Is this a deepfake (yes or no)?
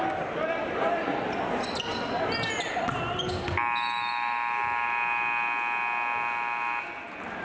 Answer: no